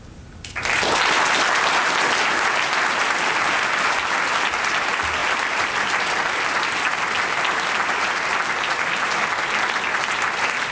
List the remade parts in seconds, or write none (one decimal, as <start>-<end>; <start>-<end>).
none